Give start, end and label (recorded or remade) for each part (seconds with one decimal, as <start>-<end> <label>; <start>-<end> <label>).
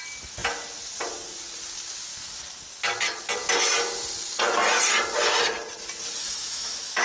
0.0-6.2 recorded; 6.2-7.0 remade